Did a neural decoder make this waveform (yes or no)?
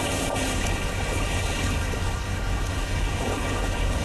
yes